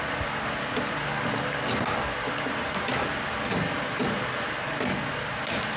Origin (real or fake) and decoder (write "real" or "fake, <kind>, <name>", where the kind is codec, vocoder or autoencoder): real